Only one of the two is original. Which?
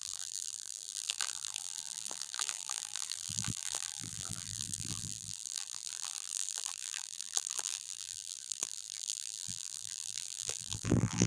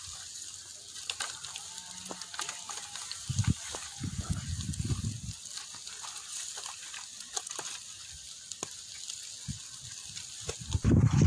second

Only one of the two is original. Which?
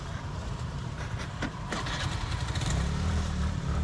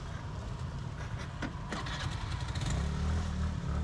second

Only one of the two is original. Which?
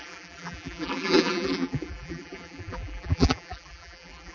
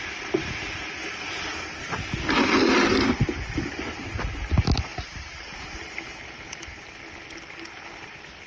second